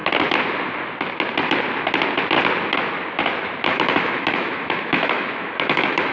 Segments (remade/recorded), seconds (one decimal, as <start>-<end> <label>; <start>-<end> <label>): 0.0-3.7 recorded; 3.7-6.1 remade